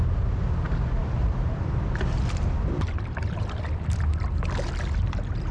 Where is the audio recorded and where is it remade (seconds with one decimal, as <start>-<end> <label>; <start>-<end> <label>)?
0.0-1.0 recorded; 1.0-4.0 remade; 4.0-5.5 recorded